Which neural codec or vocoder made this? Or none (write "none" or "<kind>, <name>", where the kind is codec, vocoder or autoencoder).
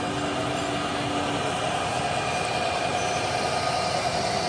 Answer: none